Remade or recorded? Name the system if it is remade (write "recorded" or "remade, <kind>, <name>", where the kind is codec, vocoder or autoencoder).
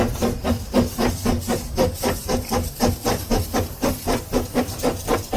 recorded